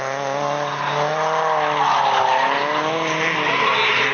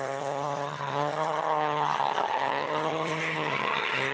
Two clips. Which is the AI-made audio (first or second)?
second